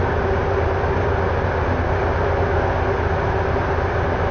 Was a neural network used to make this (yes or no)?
no